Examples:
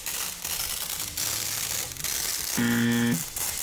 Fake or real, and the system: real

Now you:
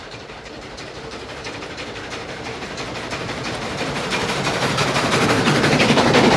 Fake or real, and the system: fake, vocoder, BigVGAN v2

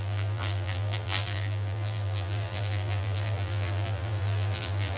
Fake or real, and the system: fake, vocoder, BigVGAN v2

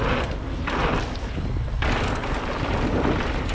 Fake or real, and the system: real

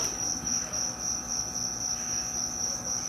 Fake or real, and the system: real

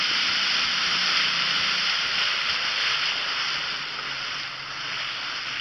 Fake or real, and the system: fake, vocoder, BigVGAN v2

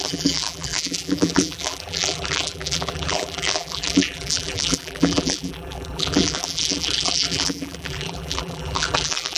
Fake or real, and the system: fake, vocoder, BigVGAN v2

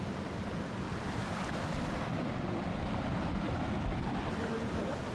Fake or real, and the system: real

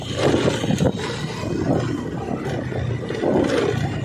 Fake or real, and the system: real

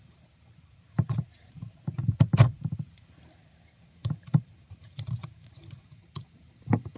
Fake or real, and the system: fake, vocoder, BigVGAN v2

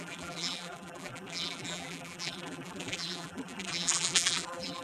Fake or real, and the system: fake, vocoder, BigVGAN v2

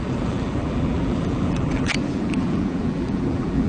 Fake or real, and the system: fake, vocoder, BigVGAN v2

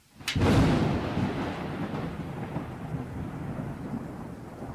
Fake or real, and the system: real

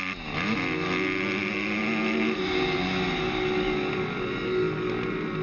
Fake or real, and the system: real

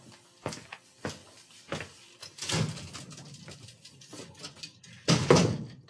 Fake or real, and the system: fake, vocoder, BigVGAN v2